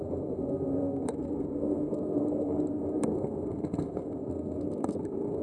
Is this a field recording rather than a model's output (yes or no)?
no